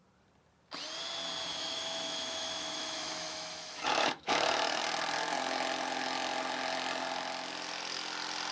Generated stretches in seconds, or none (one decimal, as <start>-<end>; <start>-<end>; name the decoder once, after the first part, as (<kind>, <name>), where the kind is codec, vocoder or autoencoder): 1.5-4.8 (autoencoder, DAC-VAE)